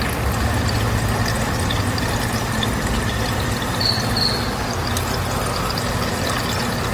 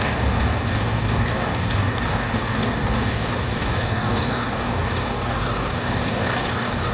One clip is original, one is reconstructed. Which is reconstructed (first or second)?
second